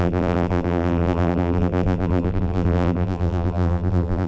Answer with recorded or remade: remade